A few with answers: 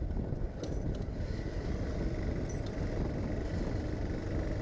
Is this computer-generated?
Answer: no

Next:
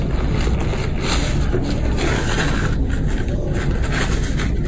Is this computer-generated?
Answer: no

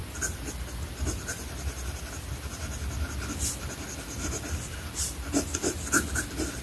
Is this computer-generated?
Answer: yes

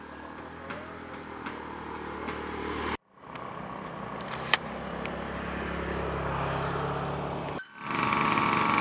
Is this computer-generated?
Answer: no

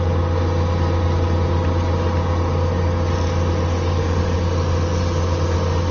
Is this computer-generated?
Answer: no